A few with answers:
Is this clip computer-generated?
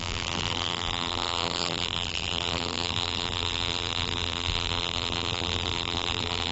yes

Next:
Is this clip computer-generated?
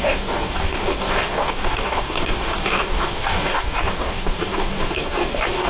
yes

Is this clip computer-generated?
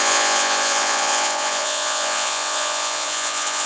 yes